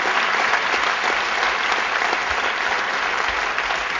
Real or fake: real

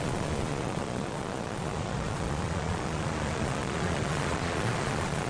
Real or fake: fake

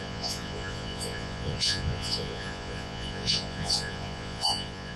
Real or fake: fake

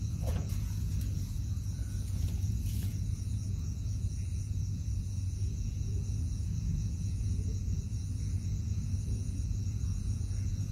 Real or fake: fake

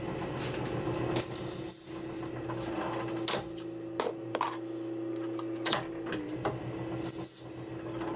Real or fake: real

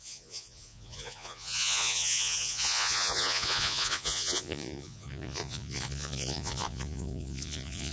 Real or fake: fake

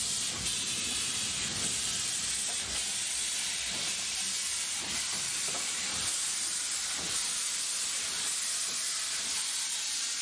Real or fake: real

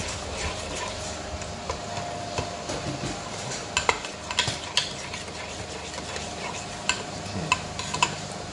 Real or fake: real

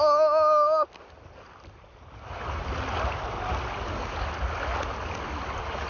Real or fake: real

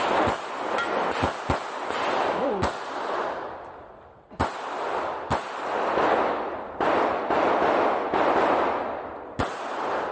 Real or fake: real